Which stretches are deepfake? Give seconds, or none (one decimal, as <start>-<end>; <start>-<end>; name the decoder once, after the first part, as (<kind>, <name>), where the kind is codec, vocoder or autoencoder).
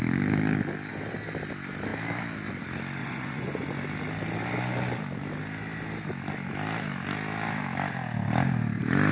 3.0-3.6 (vocoder, Vocos)